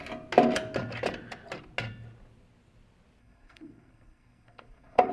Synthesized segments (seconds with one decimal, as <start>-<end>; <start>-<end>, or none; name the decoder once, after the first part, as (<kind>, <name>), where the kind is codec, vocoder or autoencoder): 3.2-5.1 (codec, SNAC)